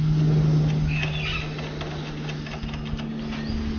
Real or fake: real